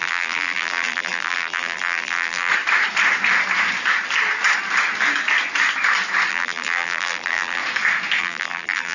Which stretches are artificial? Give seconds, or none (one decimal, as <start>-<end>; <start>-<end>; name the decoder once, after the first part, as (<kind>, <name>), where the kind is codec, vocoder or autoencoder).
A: 0.0-2.5 (vocoder, BigVGAN v2); 6.3-7.6; 8.2-8.9